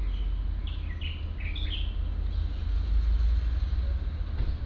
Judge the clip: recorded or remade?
recorded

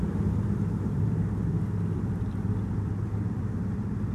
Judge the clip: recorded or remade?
remade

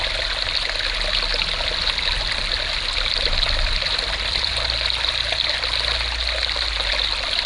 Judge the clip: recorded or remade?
recorded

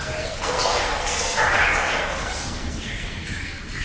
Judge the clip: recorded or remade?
remade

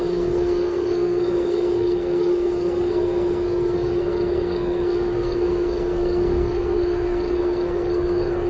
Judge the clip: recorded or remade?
remade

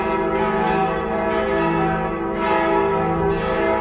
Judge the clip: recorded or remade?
recorded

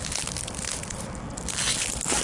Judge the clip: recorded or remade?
recorded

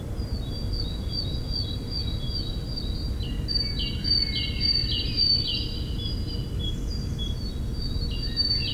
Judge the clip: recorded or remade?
recorded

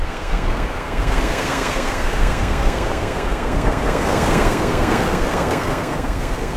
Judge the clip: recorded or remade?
remade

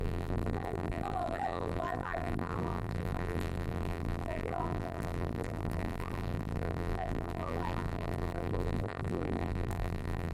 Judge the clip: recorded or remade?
remade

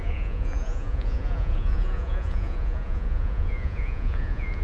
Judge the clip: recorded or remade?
remade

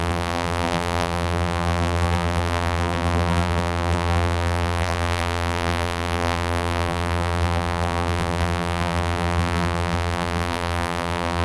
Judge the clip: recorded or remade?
remade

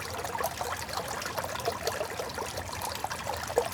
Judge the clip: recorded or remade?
recorded